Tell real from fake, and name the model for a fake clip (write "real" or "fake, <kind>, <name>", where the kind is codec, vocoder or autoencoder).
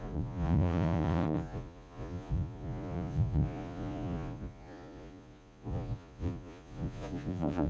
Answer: fake, vocoder, Vocos